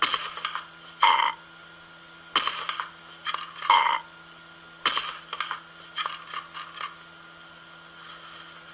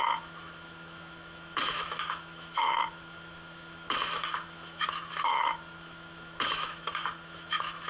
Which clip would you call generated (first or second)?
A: second